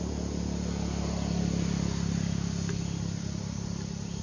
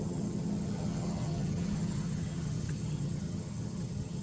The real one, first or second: first